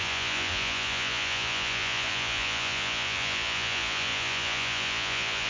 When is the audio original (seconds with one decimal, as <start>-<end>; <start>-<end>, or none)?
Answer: none